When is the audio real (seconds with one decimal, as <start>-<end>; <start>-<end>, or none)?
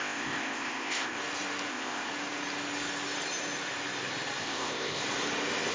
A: 1.2-1.7; 2.1-4.4; 5.0-5.7